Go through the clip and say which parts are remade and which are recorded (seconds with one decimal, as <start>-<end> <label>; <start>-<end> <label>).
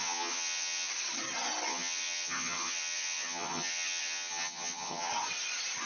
0.0-0.9 remade; 0.9-1.7 recorded; 1.7-5.1 remade; 5.1-5.9 recorded